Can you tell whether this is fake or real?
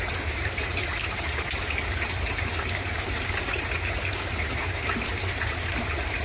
fake